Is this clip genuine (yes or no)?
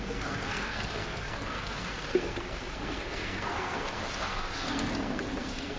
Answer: no